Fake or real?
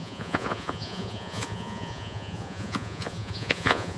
fake